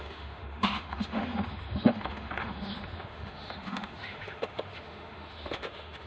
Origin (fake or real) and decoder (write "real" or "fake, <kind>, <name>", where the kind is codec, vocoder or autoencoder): fake, autoencoder, DAC-VAE